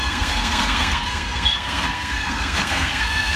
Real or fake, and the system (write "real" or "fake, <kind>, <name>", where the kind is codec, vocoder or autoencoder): fake, codec, SNAC